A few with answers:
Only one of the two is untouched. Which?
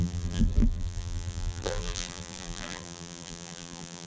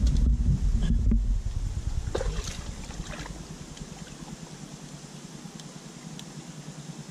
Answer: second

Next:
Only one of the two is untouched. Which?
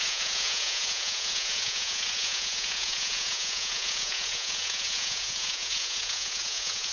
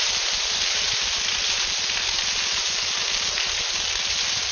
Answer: second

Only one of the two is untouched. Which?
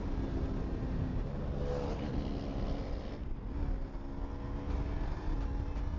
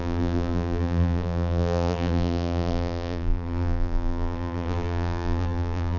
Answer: first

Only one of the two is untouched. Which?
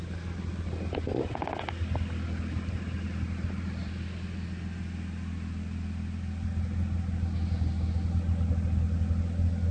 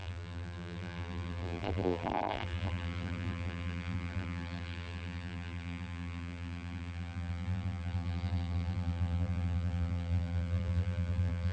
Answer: first